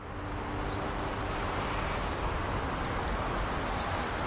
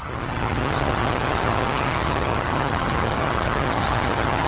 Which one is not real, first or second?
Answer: second